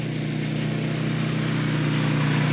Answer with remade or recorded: recorded